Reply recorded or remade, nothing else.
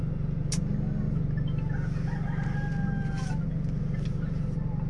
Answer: recorded